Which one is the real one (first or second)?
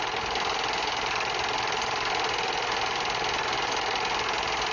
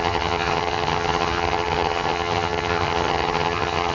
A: first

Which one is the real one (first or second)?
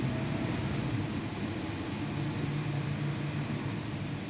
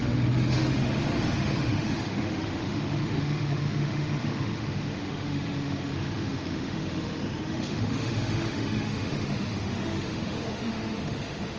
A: first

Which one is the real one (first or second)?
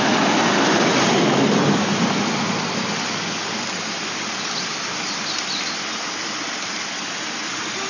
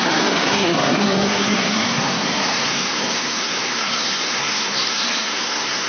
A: first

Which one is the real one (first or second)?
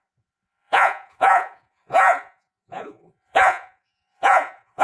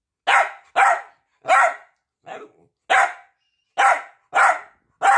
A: second